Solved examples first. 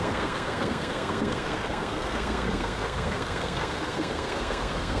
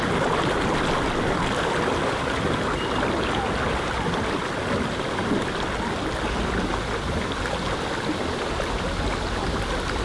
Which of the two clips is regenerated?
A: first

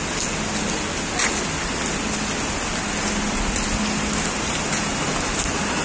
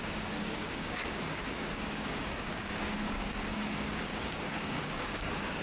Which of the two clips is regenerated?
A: second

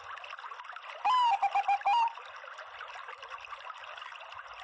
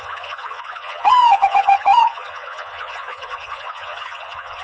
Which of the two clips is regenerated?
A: second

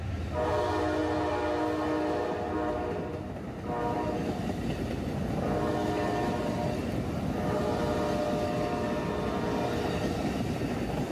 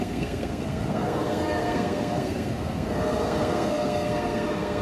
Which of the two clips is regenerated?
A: second